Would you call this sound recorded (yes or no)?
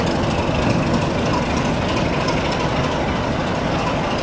yes